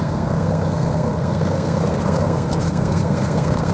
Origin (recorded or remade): remade